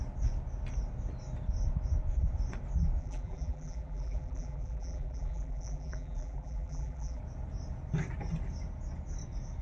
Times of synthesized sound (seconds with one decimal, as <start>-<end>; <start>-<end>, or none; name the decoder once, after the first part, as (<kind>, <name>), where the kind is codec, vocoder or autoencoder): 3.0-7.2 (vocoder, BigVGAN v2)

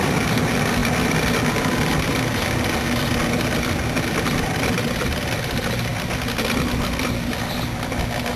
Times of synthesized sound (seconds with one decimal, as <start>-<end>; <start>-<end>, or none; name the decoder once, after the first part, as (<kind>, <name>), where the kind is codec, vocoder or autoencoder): none

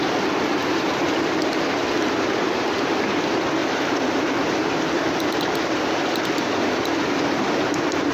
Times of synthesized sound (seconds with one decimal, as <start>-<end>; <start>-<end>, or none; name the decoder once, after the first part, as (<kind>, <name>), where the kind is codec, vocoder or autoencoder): 3.6-4.6 (vocoder, BigVGAN v2)

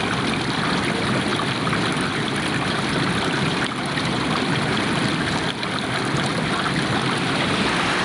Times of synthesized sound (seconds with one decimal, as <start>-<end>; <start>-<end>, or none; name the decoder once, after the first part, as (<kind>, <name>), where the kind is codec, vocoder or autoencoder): 1.3-4.8 (vocoder, BigVGAN v2)

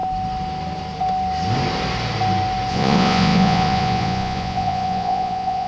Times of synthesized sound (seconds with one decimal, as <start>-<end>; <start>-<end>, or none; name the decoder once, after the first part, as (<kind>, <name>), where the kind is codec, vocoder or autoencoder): 2.7-5.7 (vocoder, Vocos)

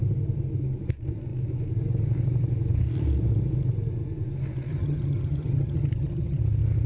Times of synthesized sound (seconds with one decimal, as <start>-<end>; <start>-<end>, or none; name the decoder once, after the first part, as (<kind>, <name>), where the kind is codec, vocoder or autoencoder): 4.7-6.4 (vocoder, HiFi-GAN)